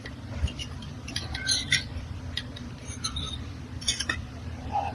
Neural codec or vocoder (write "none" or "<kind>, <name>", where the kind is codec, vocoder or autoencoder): none